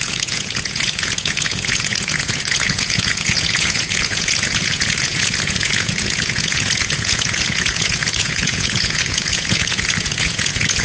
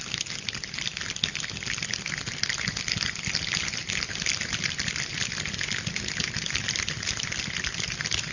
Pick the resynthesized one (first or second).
first